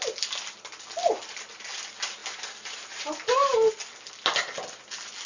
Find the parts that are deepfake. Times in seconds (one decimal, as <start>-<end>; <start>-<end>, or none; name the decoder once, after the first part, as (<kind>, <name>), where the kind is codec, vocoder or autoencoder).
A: 2.2-3.7 (vocoder, BigVGAN v2)

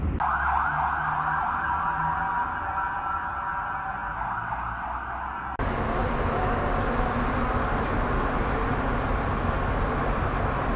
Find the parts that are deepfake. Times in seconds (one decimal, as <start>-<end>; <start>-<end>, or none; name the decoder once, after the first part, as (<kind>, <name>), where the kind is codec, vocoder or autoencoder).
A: none

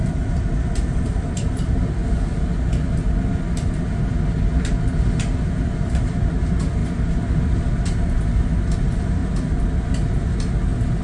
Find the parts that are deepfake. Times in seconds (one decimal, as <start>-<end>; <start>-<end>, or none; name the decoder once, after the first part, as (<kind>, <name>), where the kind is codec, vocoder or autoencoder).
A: 0.0-2.0 (vocoder, BigVGAN v2); 6.0-9.2

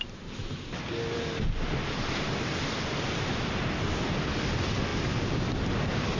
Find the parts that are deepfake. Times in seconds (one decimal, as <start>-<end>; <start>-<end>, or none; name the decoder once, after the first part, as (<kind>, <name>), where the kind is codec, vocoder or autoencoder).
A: none

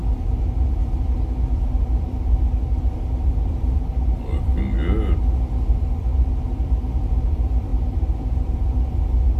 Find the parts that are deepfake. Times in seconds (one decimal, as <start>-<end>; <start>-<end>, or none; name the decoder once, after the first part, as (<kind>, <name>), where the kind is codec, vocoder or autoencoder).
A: 0.6-4.5 (vocoder, BigVGAN v2); 5.7-9.4

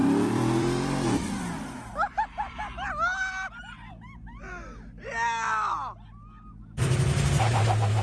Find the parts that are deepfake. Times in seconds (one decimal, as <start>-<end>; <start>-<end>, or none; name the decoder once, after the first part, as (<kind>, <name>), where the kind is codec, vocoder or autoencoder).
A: 0.0-2.6 (vocoder, BigVGAN v2)

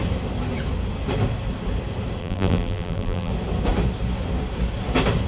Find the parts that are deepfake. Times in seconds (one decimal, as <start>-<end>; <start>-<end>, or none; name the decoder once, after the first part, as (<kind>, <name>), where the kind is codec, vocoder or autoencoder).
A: 2.2-3.3 (vocoder, BigVGAN v2)